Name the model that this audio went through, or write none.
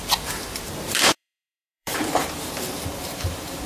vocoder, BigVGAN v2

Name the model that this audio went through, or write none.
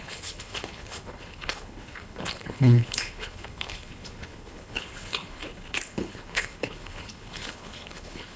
codec, HILCodec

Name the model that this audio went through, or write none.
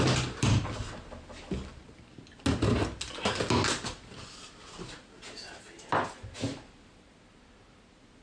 none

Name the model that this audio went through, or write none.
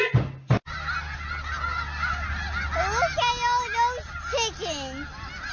none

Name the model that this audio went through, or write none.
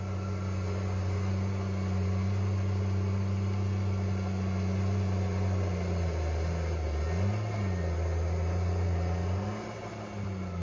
none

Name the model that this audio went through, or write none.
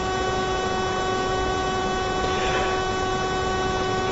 none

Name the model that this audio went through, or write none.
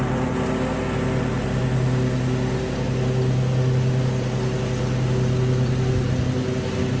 none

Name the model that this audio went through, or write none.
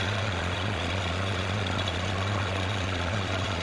vocoder, Vocos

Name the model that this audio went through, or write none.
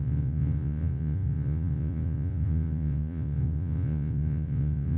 vocoder, Vocos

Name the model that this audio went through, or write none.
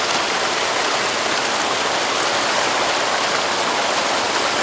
none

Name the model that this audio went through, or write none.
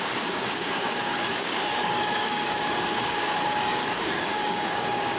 codec, DAC